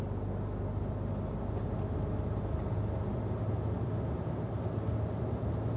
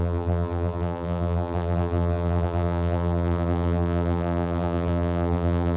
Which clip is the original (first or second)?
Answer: first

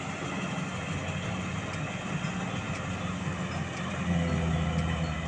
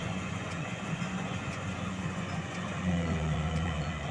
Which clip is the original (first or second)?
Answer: first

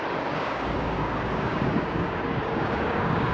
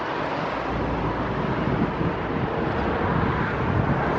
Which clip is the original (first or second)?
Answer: second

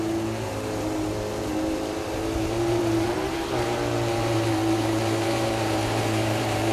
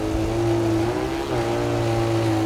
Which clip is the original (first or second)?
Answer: second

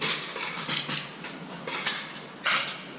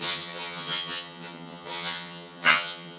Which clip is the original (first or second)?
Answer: first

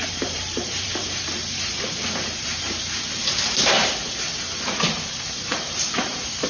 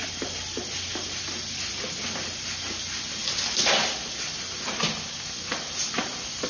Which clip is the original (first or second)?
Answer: second